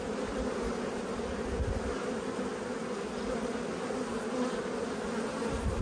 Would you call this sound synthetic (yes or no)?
no